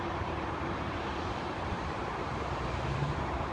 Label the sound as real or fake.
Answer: fake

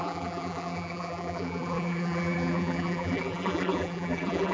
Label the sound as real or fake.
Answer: fake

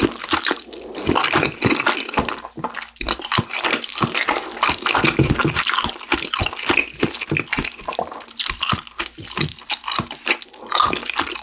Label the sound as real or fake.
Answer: real